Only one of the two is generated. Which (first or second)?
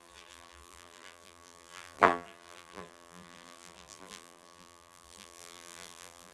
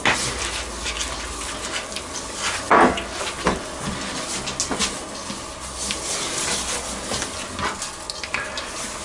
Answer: first